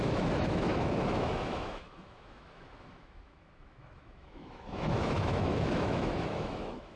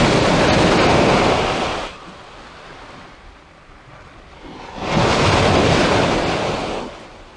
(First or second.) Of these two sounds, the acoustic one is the second